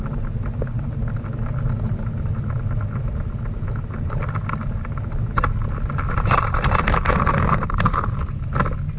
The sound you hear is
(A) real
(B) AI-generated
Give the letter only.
A